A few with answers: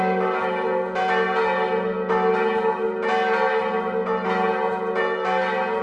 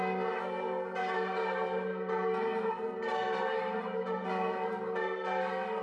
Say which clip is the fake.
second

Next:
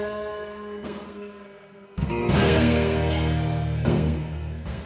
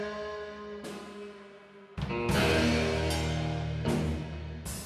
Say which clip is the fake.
first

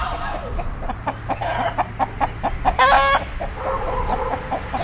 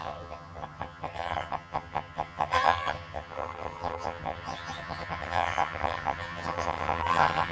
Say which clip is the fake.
second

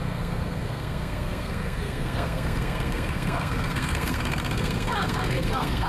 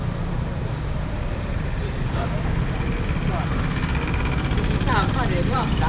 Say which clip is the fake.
first